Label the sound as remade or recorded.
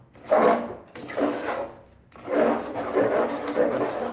recorded